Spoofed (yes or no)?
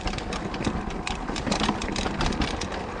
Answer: no